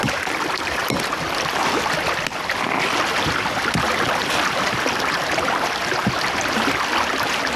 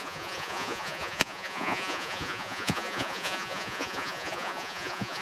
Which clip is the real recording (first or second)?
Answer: first